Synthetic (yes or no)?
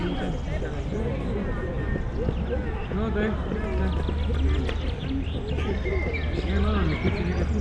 no